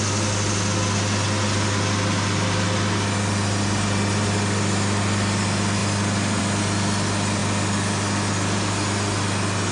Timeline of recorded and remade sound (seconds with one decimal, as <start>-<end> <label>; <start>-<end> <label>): 0.0-9.7 recorded

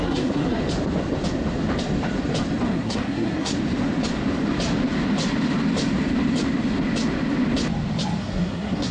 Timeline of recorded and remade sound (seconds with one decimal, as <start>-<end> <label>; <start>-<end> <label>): 0.0-0.6 remade; 0.6-2.7 recorded; 2.7-3.5 remade; 3.5-8.2 recorded; 8.2-8.9 remade

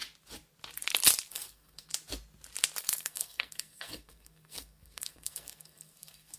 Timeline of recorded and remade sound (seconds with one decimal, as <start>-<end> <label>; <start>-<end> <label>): 0.0-1.3 recorded; 1.3-1.9 remade; 1.9-2.8 recorded; 2.8-6.4 remade